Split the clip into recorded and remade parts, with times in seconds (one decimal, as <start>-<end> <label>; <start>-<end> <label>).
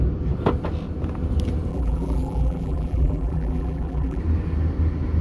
0.0-1.7 recorded; 1.7-4.2 remade; 4.2-5.2 recorded